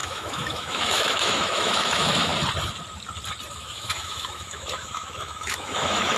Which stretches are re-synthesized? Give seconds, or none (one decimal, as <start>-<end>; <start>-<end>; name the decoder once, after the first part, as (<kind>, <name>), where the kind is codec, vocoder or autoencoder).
0.0-2.3 (autoencoder, DAC-VAE); 3.5-6.2